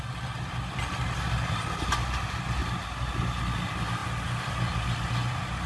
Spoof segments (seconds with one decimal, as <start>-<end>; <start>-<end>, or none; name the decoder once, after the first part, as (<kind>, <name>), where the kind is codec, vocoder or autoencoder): none